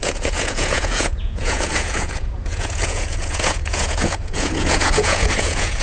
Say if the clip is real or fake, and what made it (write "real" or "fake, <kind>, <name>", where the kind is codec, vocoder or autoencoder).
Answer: fake, vocoder, Vocos